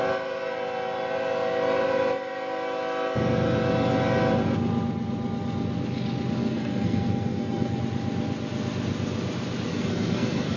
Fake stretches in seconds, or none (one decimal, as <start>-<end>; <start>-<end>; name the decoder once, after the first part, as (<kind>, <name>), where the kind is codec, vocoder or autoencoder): 6.4-7.8 (codec, SNAC); 9.7-10.6